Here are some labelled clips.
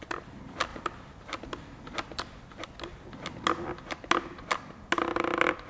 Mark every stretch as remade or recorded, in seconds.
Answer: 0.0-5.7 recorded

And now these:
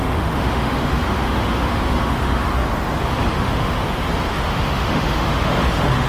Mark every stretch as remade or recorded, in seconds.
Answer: 0.0-2.5 remade; 2.5-3.3 recorded; 3.3-3.8 remade; 3.8-4.3 recorded; 4.3-6.1 remade

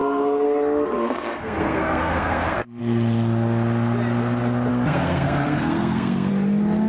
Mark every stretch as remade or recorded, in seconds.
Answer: 0.0-2.8 remade; 2.8-4.7 recorded; 4.7-6.3 remade; 6.3-6.9 recorded

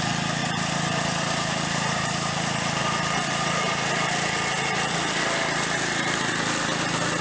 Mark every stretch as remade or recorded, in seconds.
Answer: 0.0-0.4 recorded; 0.4-2.8 remade; 2.8-7.2 recorded

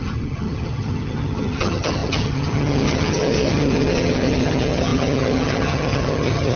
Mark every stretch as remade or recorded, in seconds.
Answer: 0.0-6.6 remade

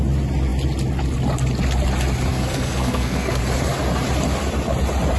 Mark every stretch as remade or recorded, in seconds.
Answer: 0.0-2.3 recorded; 2.3-3.4 remade; 3.4-5.2 recorded

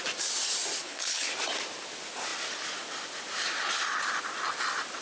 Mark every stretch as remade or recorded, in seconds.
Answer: 0.0-0.8 recorded; 0.8-1.3 remade; 1.3-5.0 recorded